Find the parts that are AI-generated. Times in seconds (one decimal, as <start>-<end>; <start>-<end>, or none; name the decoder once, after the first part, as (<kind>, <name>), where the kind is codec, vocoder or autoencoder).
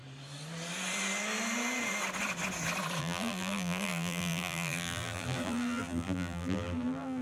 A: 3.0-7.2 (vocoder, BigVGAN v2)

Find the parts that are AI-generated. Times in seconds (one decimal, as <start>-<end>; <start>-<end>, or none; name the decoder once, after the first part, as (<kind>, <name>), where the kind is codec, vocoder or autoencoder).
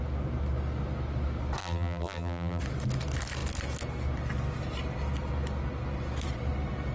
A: 1.6-2.6 (vocoder, BigVGAN v2)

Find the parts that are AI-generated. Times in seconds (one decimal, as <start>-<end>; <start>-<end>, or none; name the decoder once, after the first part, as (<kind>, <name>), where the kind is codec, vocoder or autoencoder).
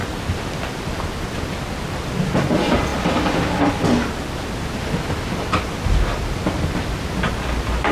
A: none